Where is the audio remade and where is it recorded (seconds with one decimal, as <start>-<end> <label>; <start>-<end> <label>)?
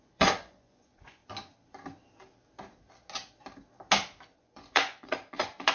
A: 0.0-1.2 remade; 1.2-4.4 recorded; 4.4-5.7 remade